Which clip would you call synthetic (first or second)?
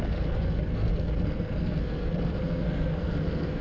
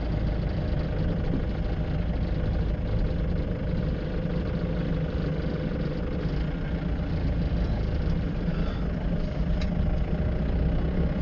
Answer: first